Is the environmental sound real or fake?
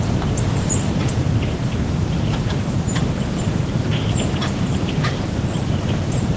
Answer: fake